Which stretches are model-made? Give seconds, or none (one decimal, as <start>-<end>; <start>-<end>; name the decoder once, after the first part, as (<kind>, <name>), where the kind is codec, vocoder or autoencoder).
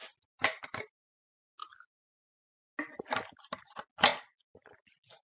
none